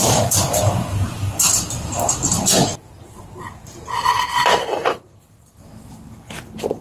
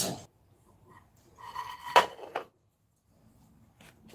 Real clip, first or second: second